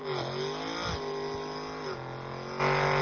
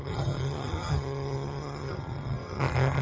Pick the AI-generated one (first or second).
second